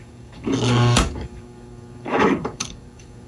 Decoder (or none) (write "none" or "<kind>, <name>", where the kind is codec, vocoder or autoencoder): codec, DAC